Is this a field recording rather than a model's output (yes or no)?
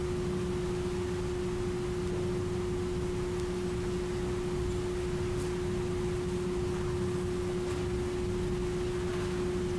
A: yes